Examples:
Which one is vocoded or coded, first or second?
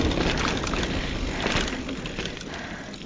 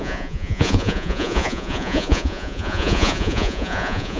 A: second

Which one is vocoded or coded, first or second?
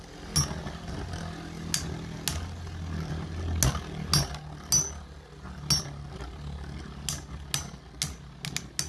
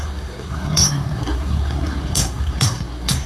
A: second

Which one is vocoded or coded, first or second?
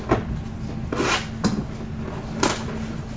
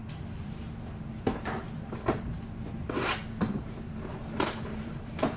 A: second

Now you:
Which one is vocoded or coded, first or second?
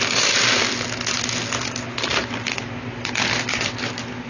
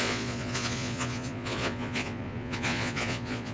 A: second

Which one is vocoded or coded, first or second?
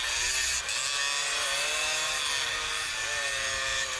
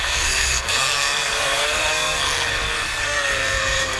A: second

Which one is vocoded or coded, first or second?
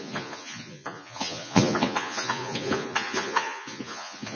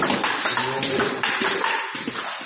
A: first